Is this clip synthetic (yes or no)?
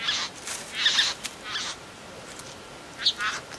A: no